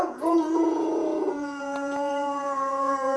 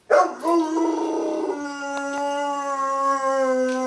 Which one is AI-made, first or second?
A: first